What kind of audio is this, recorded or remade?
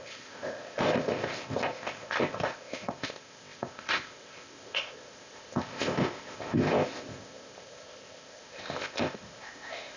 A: remade